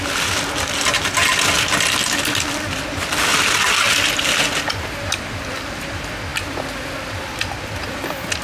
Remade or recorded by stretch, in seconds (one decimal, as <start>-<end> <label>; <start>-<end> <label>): 0.0-8.4 recorded